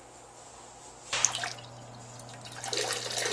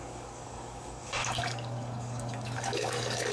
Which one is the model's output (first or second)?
second